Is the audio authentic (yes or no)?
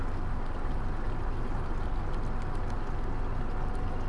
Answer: yes